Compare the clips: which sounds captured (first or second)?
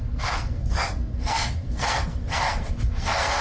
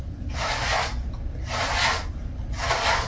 second